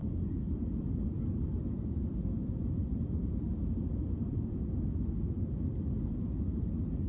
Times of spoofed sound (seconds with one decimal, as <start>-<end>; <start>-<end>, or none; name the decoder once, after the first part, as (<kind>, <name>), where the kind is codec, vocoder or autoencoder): 0.0-1.0 (vocoder, BigVGAN v2); 1.6-4.2